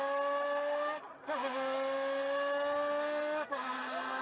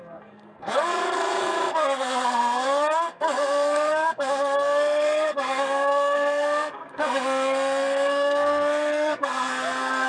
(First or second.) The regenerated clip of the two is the second